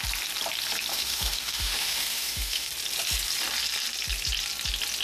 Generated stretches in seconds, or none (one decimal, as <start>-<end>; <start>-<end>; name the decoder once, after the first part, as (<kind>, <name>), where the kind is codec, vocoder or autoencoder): 0.9-2.7 (autoencoder, DAC-VAE)